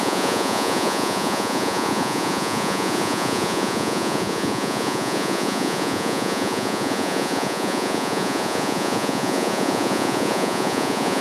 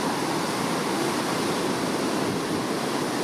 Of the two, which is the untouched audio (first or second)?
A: second